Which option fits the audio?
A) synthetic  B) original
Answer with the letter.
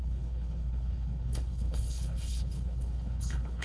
A